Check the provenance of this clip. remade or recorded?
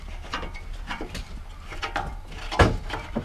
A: recorded